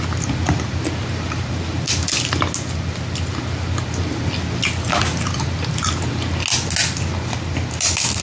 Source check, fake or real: real